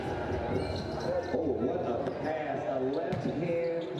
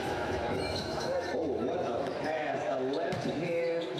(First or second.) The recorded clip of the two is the first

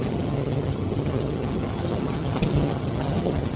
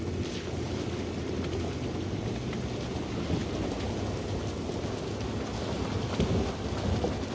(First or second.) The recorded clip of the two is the second